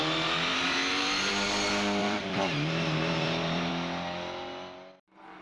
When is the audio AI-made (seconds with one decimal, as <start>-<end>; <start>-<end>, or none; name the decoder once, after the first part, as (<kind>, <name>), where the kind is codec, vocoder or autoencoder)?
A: 0.5-1.3 (vocoder, BigVGAN v2); 2.0-3.7